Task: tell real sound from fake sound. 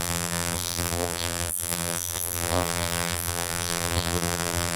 fake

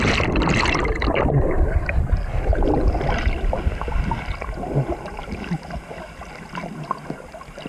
real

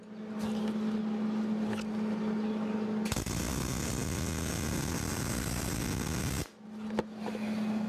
real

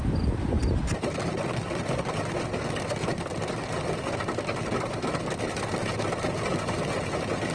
real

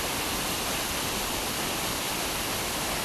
real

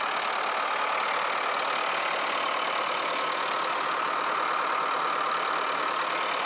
real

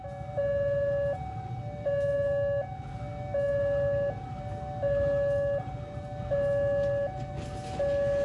real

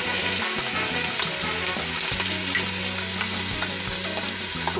real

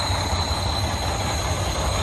real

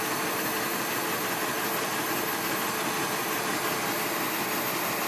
real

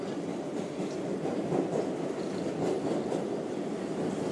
real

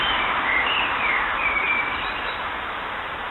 fake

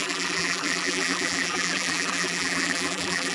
fake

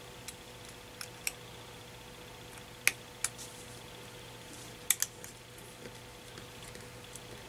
real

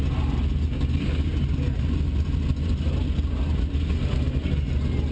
real